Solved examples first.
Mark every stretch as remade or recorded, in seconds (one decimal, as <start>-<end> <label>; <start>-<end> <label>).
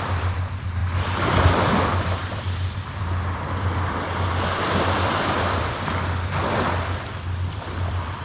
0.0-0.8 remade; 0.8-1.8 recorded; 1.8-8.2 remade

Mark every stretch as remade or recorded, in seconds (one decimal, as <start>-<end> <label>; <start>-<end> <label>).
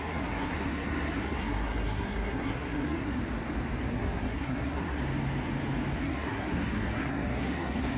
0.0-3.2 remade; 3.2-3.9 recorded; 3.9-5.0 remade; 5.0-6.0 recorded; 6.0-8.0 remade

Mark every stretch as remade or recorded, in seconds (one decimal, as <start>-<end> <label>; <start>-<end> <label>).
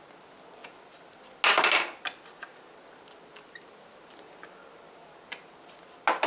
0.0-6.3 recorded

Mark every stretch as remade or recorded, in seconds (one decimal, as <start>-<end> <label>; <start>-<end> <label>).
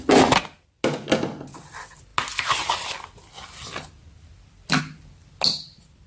0.0-6.1 recorded